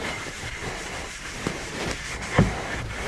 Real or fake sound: fake